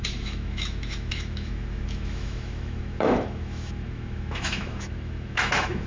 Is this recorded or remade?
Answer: remade